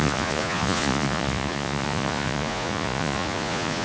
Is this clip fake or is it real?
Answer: fake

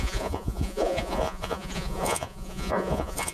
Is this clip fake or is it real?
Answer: fake